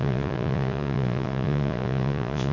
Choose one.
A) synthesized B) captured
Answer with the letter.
A